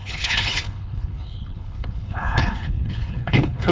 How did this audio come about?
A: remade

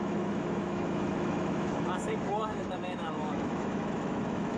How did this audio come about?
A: remade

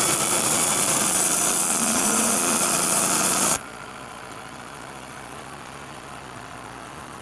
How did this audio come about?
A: remade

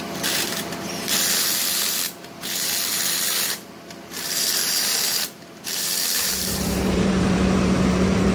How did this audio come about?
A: remade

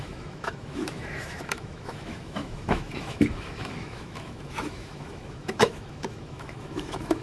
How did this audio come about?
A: remade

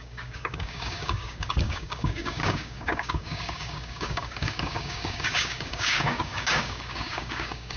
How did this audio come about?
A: remade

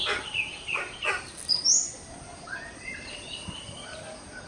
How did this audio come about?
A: recorded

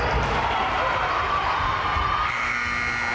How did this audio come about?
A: recorded